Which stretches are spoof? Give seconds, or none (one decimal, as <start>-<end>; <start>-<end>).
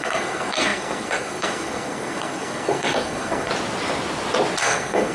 0.0-3.5; 4.6-5.1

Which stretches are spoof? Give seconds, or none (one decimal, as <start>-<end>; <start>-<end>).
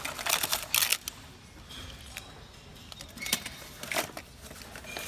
2.7-4.4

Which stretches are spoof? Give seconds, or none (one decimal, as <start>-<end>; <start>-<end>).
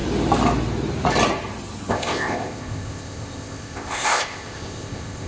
1.9-5.3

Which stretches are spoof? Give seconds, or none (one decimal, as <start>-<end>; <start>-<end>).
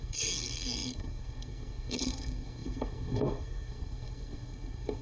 0.0-5.0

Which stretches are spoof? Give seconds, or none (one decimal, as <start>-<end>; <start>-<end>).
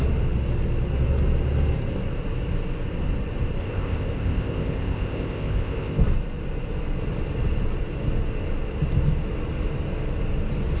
3.6-6.0